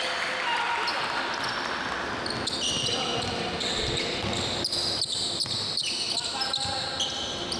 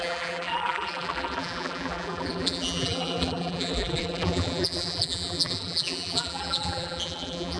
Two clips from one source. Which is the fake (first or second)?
second